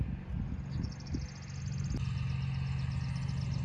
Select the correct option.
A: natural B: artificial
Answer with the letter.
A